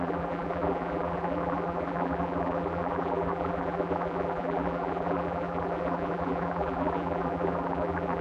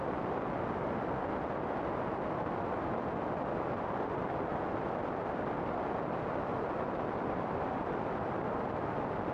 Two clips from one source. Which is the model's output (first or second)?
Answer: first